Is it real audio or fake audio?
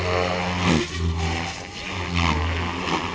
real